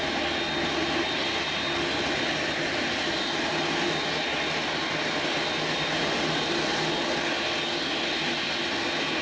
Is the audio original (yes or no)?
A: yes